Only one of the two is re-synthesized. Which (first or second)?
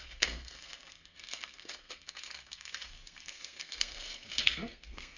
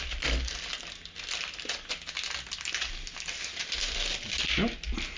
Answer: first